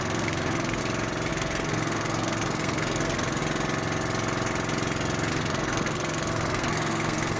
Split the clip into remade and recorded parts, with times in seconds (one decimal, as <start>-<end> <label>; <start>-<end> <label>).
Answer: 0.0-0.8 remade; 0.8-1.3 recorded; 1.3-3.4 remade; 3.4-5.3 recorded; 5.3-7.4 remade